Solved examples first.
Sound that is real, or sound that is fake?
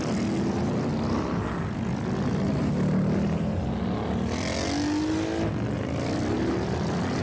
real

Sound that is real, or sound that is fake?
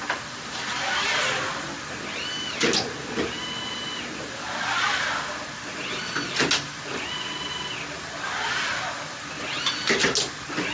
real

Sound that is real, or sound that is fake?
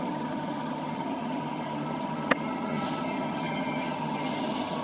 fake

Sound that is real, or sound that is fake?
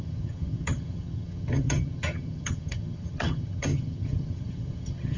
fake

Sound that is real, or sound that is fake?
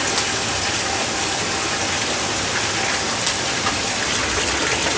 real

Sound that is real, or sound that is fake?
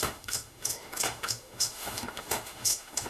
fake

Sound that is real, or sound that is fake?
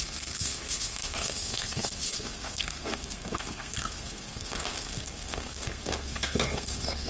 fake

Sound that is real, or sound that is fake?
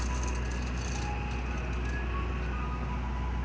real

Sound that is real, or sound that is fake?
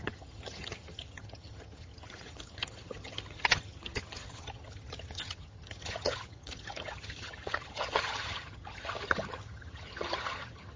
fake